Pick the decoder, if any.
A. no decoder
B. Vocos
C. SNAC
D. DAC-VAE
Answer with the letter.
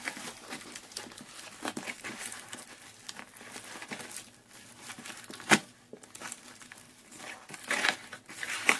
A